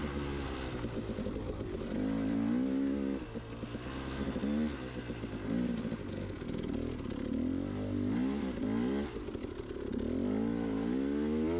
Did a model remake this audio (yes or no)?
no